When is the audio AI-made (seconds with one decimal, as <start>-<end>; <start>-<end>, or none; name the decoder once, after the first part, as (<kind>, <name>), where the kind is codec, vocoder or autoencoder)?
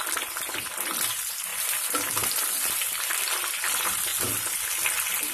none